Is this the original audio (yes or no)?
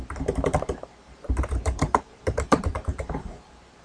no